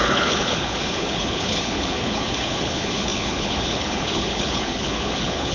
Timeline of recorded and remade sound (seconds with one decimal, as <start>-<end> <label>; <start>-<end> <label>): 0.0-5.5 remade